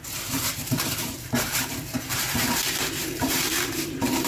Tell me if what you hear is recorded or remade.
remade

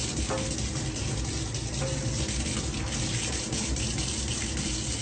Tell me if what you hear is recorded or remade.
recorded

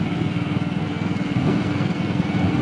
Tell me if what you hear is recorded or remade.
remade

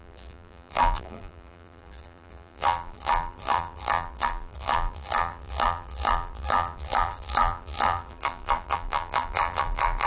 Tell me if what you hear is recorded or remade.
remade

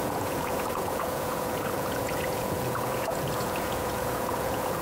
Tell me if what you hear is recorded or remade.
remade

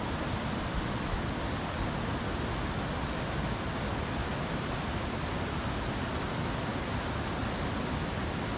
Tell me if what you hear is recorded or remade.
recorded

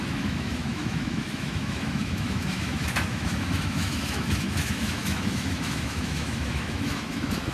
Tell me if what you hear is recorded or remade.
remade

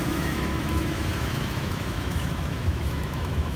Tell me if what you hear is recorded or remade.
remade